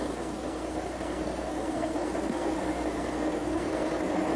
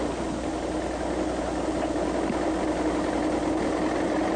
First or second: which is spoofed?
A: first